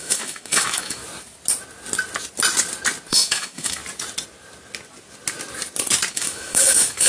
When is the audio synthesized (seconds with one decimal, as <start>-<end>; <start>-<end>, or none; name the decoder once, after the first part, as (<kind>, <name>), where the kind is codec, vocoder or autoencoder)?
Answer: 0.0-1.0 (autoencoder, DAC-VAE); 3.1-3.8; 6.1-7.1